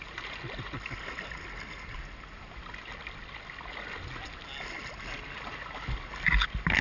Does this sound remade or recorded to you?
recorded